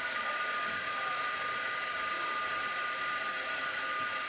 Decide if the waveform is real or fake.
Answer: real